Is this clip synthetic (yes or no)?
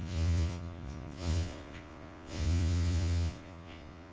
yes